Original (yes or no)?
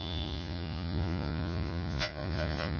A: no